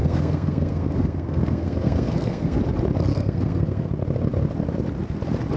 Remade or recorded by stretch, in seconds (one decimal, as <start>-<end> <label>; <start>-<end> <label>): 0.0-2.6 remade; 2.6-3.1 recorded; 3.1-3.9 remade; 3.9-5.6 recorded